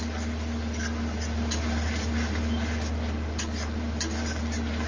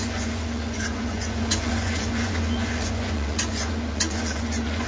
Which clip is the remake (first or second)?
second